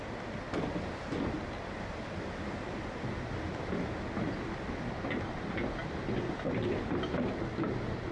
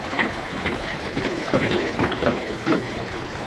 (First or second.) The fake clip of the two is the second